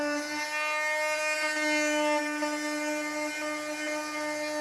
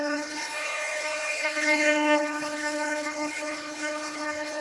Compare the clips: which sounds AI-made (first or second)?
second